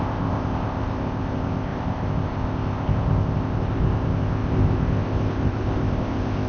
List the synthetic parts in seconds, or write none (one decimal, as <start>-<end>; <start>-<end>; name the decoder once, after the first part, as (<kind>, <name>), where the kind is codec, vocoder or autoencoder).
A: 0.0-6.5 (codec, ZipCodec)